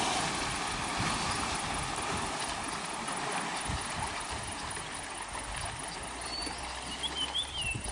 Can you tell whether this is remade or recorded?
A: recorded